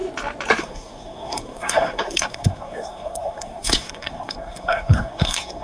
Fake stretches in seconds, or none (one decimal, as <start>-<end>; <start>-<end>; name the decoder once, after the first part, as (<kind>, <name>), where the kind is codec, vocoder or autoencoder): 0.6-5.6 (codec, SNAC)